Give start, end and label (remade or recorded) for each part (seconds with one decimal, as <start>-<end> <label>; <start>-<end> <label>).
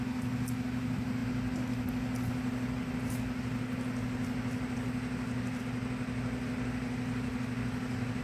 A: 0.0-8.2 recorded